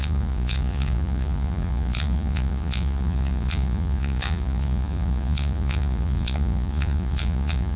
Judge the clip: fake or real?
fake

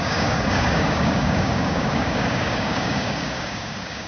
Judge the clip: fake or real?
fake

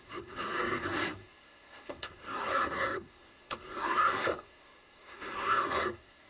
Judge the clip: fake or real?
fake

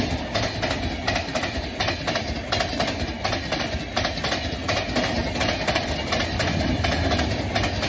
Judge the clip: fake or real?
real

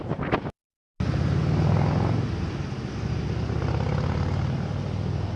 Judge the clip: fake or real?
real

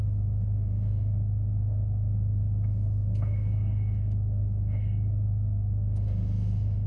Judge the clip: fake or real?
fake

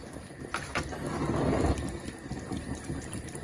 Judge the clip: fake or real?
real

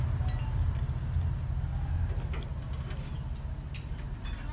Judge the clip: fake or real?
real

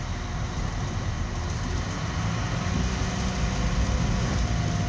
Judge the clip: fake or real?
real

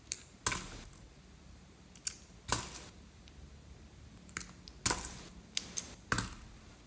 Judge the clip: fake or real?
real